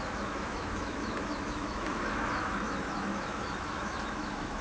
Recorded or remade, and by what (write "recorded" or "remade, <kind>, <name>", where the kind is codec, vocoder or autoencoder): remade, autoencoder, DAC-VAE